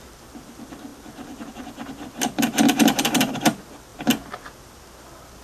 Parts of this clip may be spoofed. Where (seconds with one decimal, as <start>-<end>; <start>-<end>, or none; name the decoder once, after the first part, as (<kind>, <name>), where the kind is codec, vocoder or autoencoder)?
none